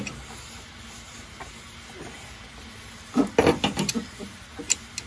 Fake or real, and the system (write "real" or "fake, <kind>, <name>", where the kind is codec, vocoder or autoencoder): real